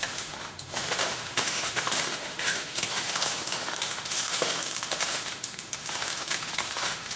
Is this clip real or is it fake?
fake